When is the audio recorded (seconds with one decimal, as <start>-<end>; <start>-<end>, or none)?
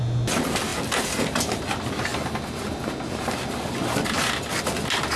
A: 0.0-5.2